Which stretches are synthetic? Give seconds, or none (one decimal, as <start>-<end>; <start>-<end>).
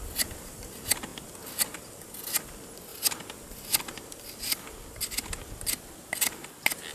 none